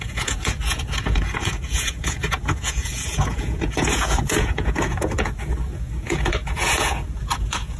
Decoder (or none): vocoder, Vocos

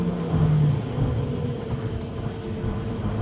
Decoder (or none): none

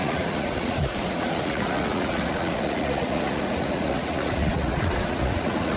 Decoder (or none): vocoder, Vocos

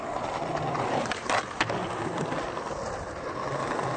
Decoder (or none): none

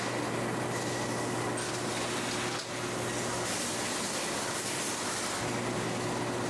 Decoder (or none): none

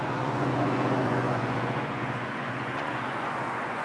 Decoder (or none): vocoder, Vocos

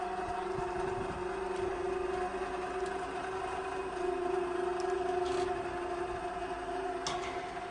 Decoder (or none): none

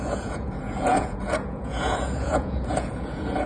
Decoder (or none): vocoder, Vocos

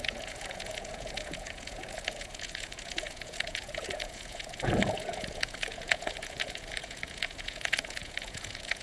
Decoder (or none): vocoder, Vocos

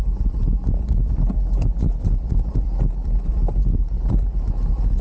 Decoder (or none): none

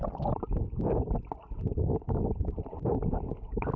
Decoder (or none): none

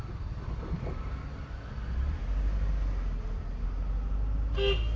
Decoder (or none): none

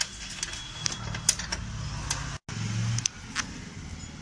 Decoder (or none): none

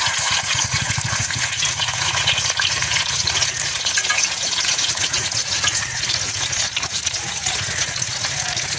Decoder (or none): vocoder, Vocos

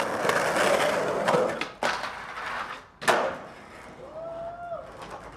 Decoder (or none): none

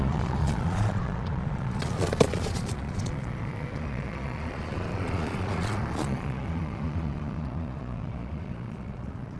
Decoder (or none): vocoder, Vocos